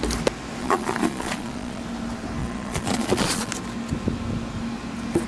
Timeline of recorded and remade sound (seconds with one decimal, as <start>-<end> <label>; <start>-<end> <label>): 0.0-0.6 recorded; 0.6-1.8 remade; 1.8-2.4 recorded; 2.4-3.5 remade; 3.5-5.3 recorded